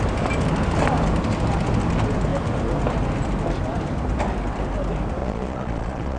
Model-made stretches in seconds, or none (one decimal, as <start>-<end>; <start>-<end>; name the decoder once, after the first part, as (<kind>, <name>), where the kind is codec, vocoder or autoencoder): 5.2-6.2 (vocoder, Vocos)